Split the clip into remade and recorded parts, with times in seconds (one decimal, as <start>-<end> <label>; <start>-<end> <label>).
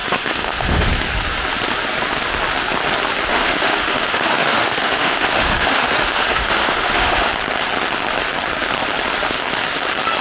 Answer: 0.0-0.9 remade; 0.9-3.3 recorded; 3.3-7.3 remade; 7.3-10.2 recorded